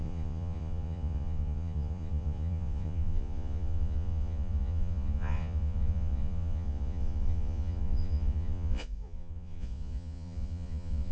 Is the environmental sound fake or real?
fake